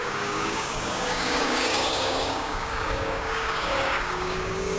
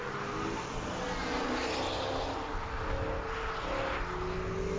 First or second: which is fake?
first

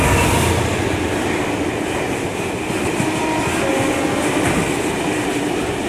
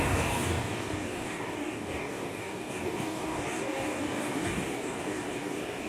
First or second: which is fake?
second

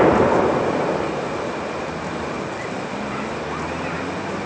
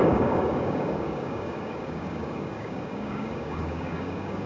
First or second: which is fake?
second